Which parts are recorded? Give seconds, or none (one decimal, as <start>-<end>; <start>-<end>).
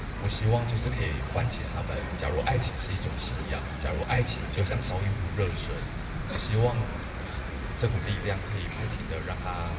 0.0-0.8; 4.9-6.9; 7.9-9.8